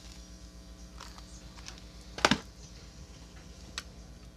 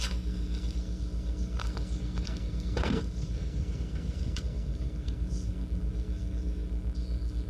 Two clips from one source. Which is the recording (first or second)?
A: first